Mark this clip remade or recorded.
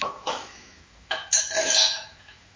remade